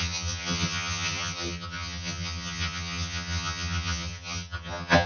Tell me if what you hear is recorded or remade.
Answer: remade